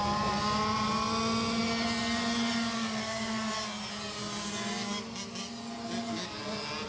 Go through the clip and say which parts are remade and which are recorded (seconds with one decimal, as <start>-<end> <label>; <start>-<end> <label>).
0.0-6.9 recorded